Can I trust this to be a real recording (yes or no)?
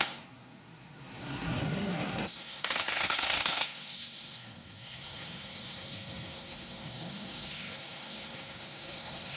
no